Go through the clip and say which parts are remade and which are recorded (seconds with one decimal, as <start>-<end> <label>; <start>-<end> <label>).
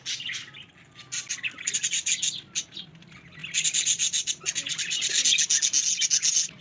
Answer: 0.0-6.6 recorded